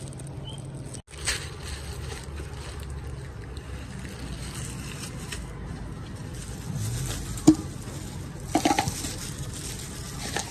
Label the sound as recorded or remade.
recorded